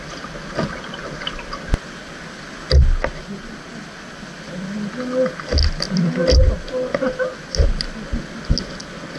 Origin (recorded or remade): recorded